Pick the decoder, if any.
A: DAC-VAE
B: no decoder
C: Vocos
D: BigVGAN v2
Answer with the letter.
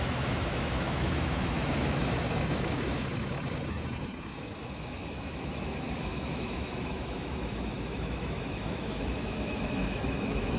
A